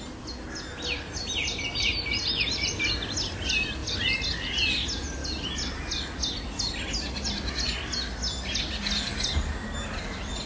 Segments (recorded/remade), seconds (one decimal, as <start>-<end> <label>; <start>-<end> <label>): 0.0-10.5 recorded